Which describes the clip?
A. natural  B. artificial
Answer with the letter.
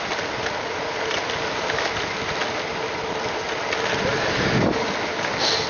A